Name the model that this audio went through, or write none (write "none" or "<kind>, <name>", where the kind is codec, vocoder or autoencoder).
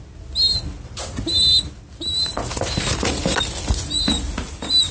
none